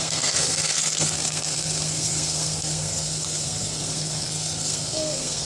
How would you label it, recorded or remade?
remade